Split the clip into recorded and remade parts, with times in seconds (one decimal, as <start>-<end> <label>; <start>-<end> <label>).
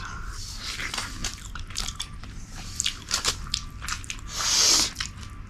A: 0.0-1.2 recorded; 1.2-3.3 remade; 3.3-5.5 recorded